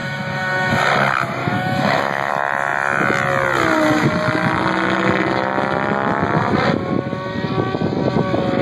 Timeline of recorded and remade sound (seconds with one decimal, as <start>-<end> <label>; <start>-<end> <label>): 0.0-0.7 remade; 0.7-1.4 recorded; 1.4-2.3 remade; 2.3-8.6 recorded